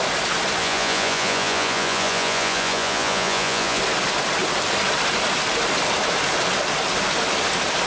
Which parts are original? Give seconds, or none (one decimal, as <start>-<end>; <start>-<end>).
0.0-0.6; 3.8-7.9